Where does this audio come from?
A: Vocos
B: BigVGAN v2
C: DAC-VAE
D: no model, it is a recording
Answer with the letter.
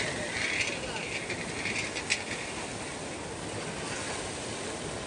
D